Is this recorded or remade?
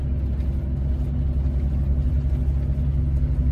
recorded